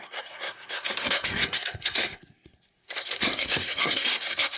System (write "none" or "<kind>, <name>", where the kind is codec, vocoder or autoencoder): codec, SNAC